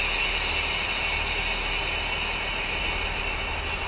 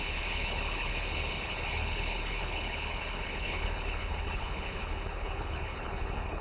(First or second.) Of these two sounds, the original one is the first